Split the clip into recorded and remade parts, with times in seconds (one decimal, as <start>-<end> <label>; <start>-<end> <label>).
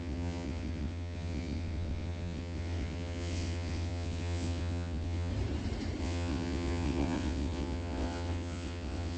0.0-5.3 remade; 5.3-6.0 recorded; 6.0-9.2 remade